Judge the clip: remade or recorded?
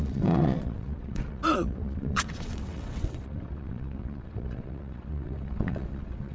remade